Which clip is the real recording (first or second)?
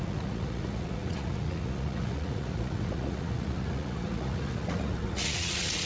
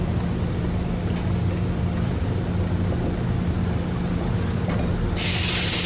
second